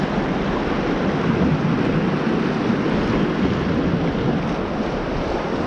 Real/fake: real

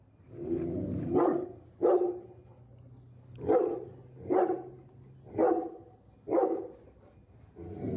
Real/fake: real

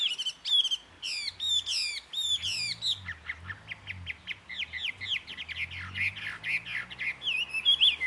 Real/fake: real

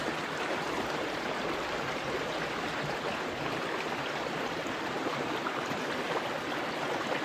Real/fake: real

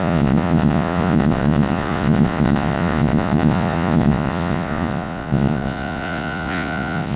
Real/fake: fake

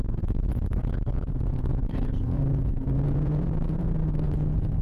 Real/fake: fake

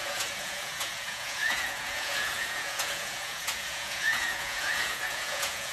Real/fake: fake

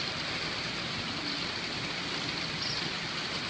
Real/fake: real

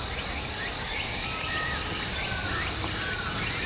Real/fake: real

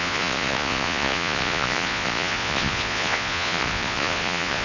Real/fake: fake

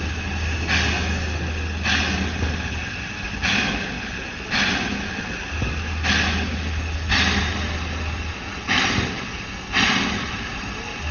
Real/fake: real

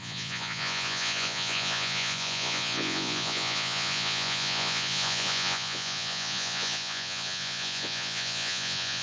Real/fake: fake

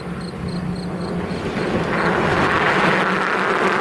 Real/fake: real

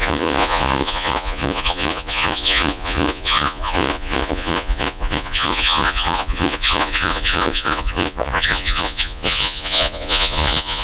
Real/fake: fake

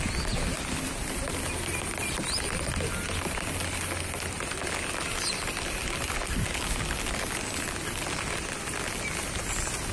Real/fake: real